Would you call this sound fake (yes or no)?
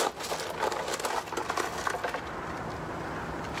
no